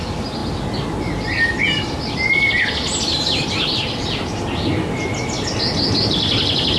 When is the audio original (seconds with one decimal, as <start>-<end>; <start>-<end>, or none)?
0.0-6.8